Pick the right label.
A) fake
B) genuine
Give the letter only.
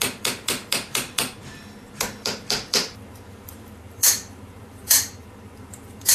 A